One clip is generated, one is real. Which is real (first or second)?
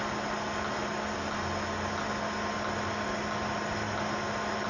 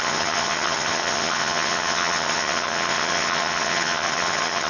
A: first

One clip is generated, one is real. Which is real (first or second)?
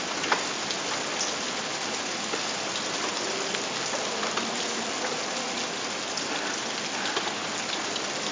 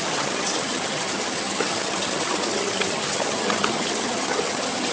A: first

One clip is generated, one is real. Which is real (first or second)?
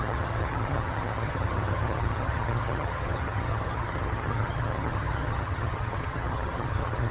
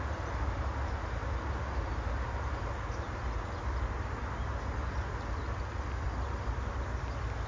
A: second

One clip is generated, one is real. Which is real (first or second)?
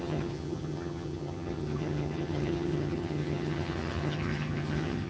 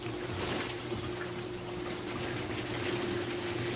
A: second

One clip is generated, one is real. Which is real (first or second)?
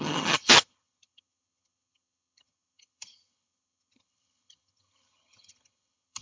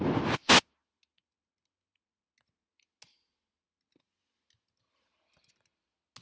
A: second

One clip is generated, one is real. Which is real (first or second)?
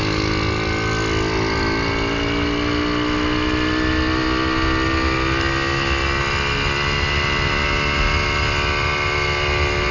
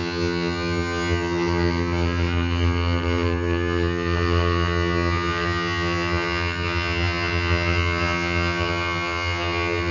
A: first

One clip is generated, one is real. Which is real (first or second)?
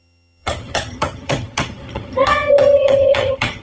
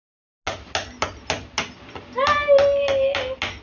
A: second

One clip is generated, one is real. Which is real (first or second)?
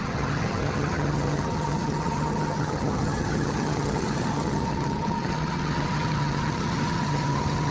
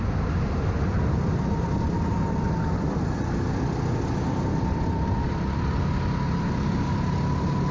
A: second